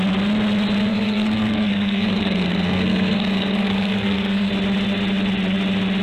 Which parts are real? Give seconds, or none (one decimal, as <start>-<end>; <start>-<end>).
0.0-0.9; 4.5-6.0